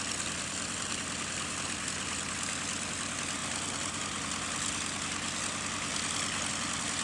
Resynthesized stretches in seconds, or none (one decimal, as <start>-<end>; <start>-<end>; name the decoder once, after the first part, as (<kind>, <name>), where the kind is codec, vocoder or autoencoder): none